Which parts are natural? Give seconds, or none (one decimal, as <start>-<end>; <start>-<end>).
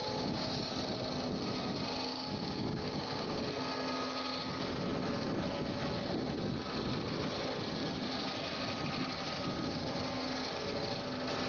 0.7-2.1; 3.4-11.5